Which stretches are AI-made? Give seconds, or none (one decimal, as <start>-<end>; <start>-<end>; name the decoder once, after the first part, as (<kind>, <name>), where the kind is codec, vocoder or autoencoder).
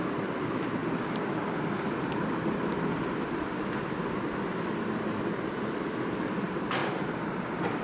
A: none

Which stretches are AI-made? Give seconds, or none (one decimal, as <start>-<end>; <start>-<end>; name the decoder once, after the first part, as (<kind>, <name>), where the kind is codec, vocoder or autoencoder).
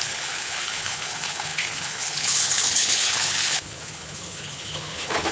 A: 0.0-5.3 (codec, HILCodec)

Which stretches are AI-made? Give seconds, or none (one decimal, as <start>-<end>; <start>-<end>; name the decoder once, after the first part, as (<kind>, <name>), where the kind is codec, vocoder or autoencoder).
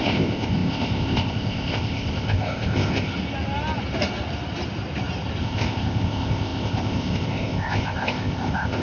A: 0.0-3.1 (codec, ZipCodec); 5.4-8.8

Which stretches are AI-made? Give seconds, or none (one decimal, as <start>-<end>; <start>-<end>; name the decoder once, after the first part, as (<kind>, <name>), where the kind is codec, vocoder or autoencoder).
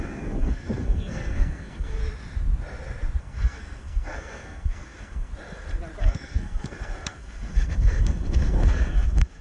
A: 0.0-2.0 (codec, SNAC); 3.2-5.3; 6.0-9.4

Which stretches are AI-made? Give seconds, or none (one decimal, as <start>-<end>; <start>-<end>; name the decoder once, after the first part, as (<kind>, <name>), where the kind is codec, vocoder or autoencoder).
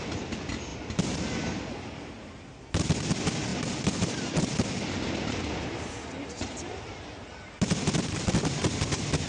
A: 0.0-0.7 (vocoder, BigVGAN v2); 3.1-9.3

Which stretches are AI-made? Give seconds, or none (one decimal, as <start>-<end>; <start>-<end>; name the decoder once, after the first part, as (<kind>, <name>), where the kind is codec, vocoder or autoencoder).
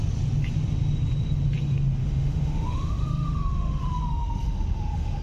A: 2.0-5.2 (autoencoder, DAC-VAE)